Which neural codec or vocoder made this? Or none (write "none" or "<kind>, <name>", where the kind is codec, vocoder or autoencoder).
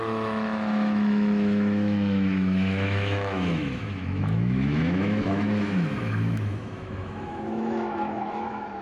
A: autoencoder, DAC-VAE